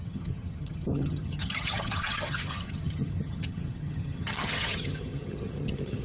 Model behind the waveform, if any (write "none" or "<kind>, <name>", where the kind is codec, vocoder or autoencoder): vocoder, HiFi-GAN